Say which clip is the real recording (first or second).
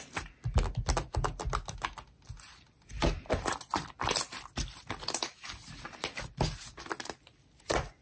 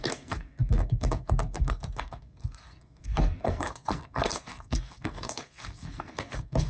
first